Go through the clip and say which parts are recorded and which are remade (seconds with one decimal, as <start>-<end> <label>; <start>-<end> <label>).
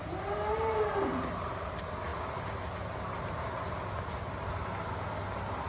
0.0-5.7 recorded